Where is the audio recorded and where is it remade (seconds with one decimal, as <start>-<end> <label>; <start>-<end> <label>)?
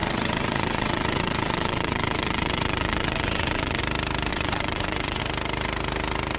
0.0-3.8 remade; 3.8-4.3 recorded; 4.3-5.2 remade; 5.2-6.4 recorded